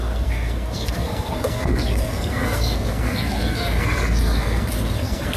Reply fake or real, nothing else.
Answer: fake